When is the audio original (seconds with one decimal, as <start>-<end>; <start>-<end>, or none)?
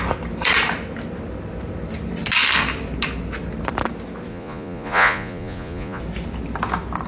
0.0-4.3; 6.0-7.1